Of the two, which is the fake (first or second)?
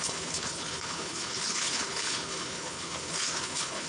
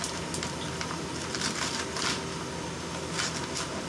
first